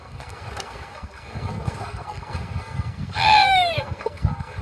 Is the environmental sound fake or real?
fake